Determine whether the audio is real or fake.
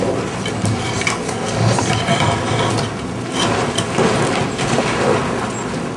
real